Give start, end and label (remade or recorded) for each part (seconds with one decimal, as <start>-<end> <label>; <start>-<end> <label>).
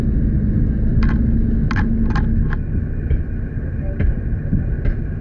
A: 0.0-5.2 recorded